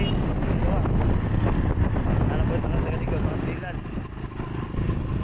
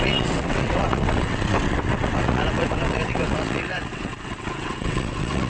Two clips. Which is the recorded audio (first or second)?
first